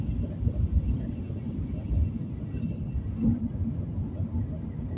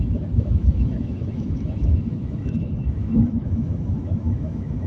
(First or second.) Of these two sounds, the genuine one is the first